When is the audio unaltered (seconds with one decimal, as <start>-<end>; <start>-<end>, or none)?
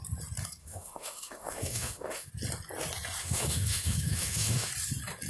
0.0-0.6; 2.3-3.2; 4.7-5.3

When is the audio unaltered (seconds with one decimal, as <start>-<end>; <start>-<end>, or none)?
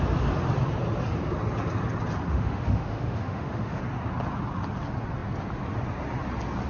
0.0-2.3; 3.8-6.7